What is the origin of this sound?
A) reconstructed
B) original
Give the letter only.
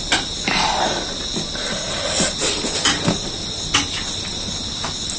B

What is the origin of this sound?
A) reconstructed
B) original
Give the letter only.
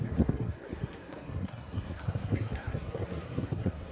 A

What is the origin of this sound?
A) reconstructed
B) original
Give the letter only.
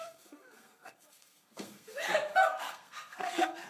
A